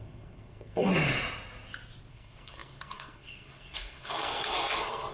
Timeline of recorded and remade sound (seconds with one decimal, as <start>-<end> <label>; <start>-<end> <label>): 0.0-0.9 remade; 0.9-2.1 recorded; 2.1-5.1 remade